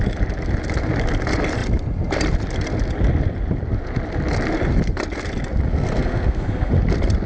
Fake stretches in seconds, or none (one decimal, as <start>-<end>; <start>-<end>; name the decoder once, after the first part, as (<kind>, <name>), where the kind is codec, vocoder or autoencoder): 5.7-6.7 (codec, SNAC)